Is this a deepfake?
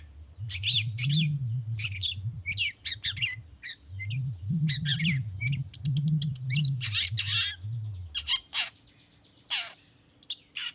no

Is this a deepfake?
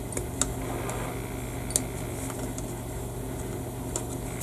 no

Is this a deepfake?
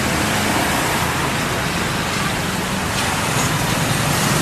no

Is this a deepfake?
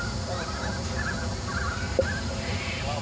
no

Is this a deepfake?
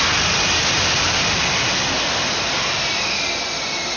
no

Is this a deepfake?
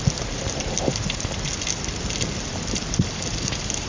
no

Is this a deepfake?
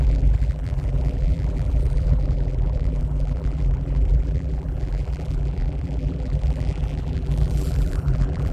yes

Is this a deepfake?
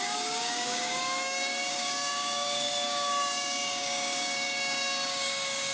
yes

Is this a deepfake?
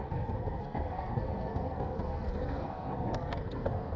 yes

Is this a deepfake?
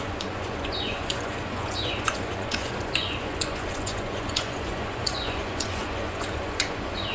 yes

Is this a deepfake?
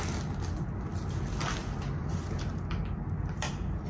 no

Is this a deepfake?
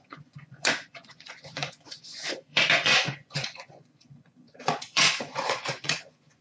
yes